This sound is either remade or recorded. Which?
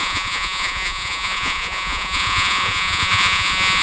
remade